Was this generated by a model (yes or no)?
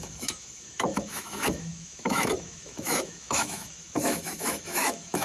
yes